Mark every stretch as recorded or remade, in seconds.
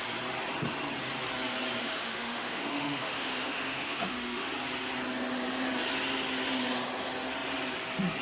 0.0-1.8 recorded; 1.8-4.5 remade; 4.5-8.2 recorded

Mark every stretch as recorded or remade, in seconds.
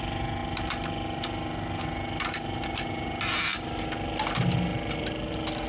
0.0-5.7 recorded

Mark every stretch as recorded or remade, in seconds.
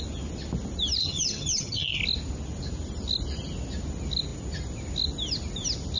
0.0-1.0 recorded; 1.0-2.0 remade; 2.0-6.0 recorded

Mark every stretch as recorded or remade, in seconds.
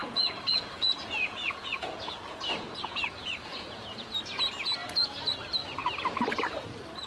0.0-4.1 remade; 4.1-4.8 recorded; 4.8-5.3 remade; 5.3-7.1 recorded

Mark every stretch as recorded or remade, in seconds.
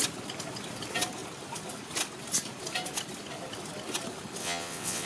0.0-4.4 recorded; 4.4-5.1 remade